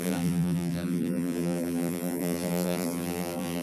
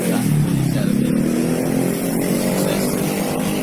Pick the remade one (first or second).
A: first